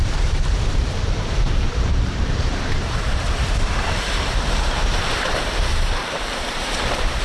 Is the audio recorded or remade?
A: remade